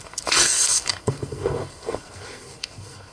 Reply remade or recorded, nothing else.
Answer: remade